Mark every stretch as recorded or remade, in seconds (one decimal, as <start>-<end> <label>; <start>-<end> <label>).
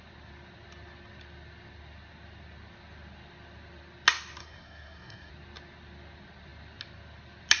0.0-4.4 recorded; 4.4-5.3 remade; 5.3-7.6 recorded